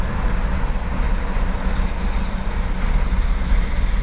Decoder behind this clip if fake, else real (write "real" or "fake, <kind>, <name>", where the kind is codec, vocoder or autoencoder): real